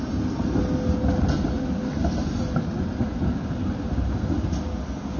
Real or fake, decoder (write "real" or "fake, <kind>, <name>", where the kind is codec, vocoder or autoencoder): real